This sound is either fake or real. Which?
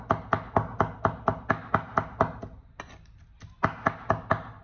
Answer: real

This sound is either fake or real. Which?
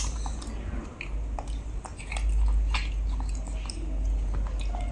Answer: real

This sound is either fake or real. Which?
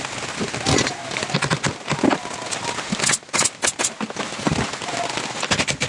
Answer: real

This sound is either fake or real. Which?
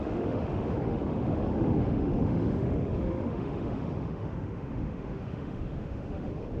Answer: fake